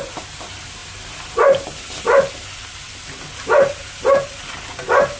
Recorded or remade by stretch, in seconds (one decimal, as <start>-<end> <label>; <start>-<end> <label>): 0.0-5.2 recorded